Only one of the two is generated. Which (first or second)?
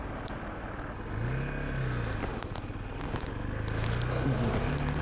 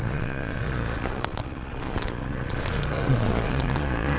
second